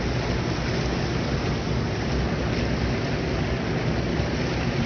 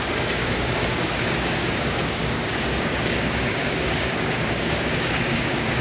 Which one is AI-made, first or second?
second